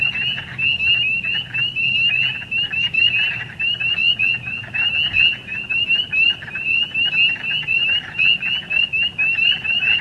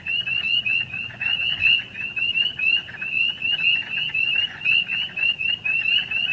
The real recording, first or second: first